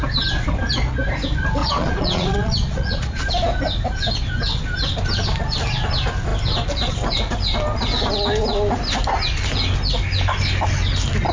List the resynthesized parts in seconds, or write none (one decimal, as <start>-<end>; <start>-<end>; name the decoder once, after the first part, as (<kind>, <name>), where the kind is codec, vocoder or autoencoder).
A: 1.6-3.3 (vocoder, Vocos)